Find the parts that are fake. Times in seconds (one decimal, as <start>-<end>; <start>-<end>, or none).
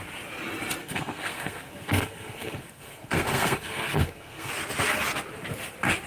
0.8-4.5